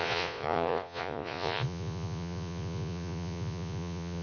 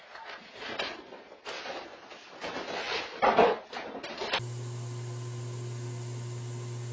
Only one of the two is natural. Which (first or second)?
second